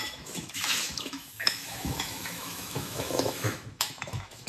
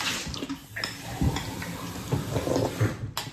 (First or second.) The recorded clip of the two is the second